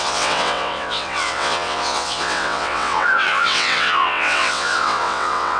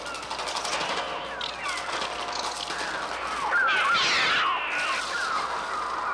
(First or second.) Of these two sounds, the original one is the second